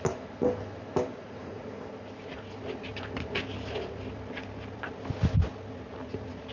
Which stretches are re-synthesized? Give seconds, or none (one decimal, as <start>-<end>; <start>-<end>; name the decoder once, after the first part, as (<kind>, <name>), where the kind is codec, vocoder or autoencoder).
1.1-1.7 (vocoder, Vocos)